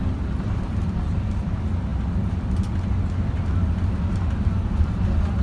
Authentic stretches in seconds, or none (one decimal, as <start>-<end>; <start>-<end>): 0.0-5.4